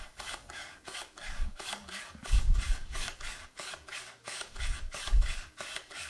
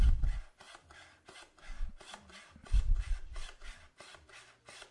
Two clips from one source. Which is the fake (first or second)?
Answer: first